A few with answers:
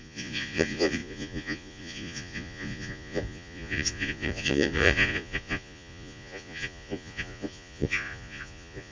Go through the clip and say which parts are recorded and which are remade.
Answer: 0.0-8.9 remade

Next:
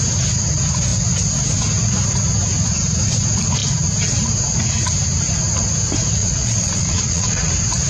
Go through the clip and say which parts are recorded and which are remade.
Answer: 0.0-6.2 recorded; 6.2-7.5 remade; 7.5-7.9 recorded

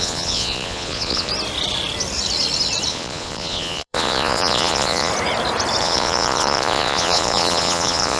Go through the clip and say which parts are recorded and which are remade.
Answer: 0.0-1.3 remade; 1.3-2.9 recorded; 2.9-5.1 remade; 5.1-5.8 recorded; 5.8-8.2 remade

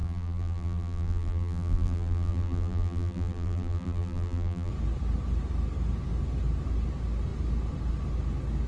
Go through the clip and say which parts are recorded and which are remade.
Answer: 0.0-4.7 remade; 4.7-8.7 recorded

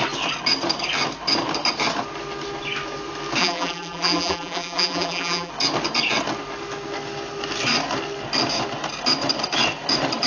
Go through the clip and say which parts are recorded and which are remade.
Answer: 0.0-3.4 recorded; 3.4-5.5 remade; 5.5-10.3 recorded

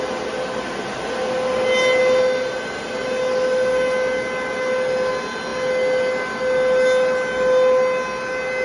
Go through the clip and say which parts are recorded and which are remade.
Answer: 0.0-8.6 recorded

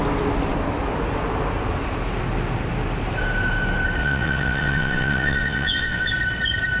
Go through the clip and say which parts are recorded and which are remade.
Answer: 0.0-4.0 recorded; 4.0-6.1 remade; 6.1-6.8 recorded